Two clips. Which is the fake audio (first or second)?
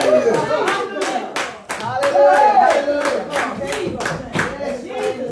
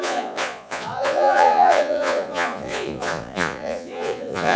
second